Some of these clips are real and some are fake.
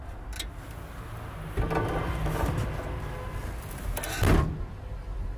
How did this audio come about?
real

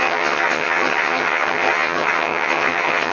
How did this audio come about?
fake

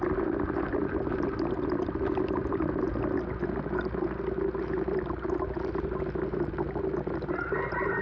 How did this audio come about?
real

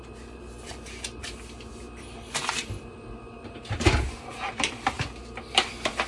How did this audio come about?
fake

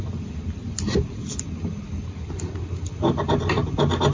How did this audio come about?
real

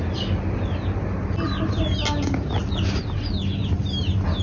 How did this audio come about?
real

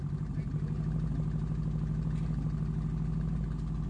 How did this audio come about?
real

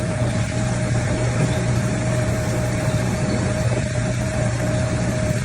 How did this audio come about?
fake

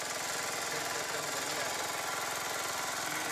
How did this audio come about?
real